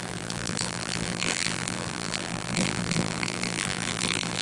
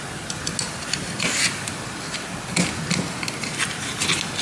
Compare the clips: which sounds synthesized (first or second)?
first